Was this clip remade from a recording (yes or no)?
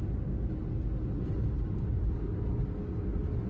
no